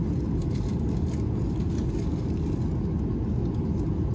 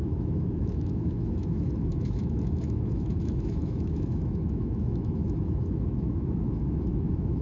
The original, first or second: first